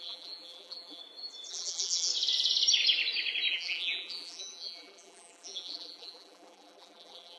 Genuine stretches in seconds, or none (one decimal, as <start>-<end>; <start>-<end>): 1.0-1.5; 2.1-3.5